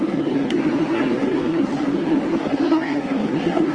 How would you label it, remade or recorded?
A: remade